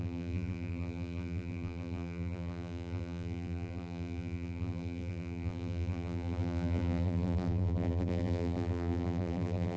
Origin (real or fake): fake